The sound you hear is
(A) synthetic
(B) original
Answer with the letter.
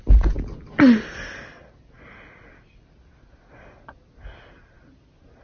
B